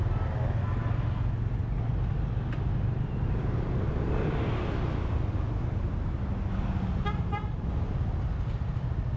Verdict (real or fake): real